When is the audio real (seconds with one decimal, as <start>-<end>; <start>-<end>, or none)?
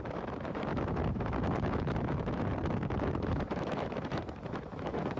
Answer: 2.5-3.0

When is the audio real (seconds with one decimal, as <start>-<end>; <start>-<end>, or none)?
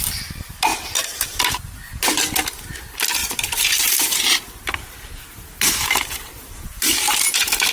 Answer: 0.0-0.7; 1.8-3.2; 4.8-6.3; 7.1-7.7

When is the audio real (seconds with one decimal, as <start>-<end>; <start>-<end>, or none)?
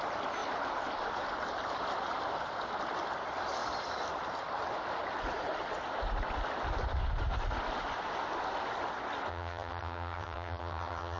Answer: 0.0-9.3